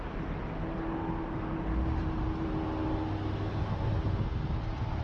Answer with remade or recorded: recorded